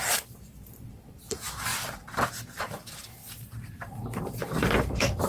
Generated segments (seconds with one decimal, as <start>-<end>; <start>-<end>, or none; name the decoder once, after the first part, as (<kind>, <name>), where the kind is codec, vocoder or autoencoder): 0.0-1.7 (vocoder, BigVGAN v2); 2.6-3.2; 3.7-5.3